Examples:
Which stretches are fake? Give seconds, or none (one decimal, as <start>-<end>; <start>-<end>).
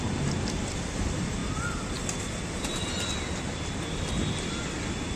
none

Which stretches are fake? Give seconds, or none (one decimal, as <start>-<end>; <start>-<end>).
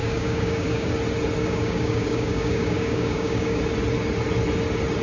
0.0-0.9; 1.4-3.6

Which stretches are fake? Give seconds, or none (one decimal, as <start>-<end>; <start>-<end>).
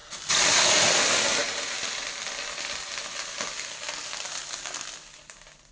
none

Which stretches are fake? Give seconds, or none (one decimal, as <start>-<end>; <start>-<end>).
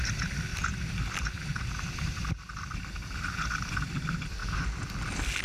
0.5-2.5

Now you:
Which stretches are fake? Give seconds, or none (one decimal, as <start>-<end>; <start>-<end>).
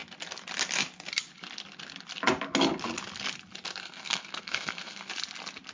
3.8-5.1